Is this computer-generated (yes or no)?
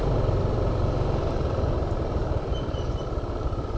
no